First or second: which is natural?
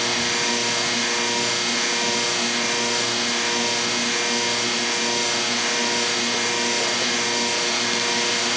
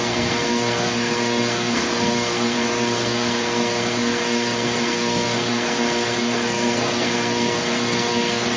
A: first